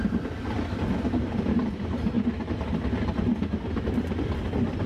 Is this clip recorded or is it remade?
recorded